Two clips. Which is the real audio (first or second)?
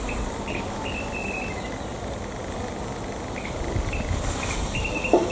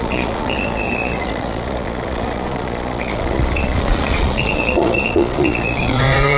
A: first